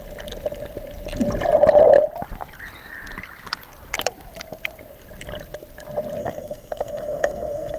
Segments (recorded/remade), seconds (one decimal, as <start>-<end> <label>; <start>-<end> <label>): 0.0-6.2 recorded; 6.2-7.8 remade